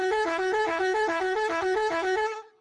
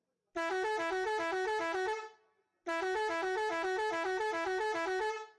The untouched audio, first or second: second